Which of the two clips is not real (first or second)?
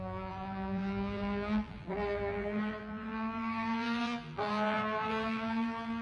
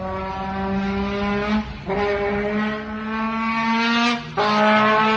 first